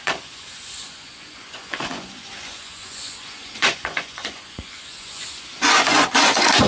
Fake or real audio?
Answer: fake